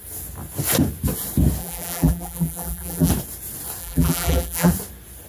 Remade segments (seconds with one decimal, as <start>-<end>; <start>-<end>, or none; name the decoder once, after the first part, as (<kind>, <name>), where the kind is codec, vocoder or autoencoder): 1.6-3.1 (vocoder, BigVGAN v2); 3.8-4.7